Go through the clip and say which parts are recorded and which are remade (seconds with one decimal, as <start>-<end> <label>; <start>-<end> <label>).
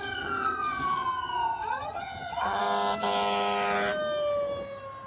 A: 0.0-2.6 remade; 2.6-5.1 recorded